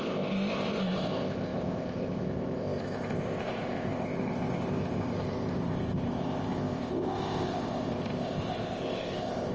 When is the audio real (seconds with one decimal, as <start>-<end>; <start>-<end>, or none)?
none